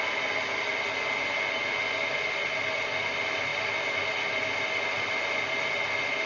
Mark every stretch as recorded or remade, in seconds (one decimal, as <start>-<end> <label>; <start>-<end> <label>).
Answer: 0.0-6.3 recorded